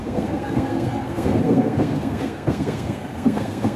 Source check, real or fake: fake